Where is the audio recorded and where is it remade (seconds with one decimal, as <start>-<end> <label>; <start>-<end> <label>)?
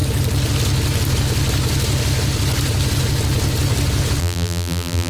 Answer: 0.0-4.2 recorded; 4.2-5.1 remade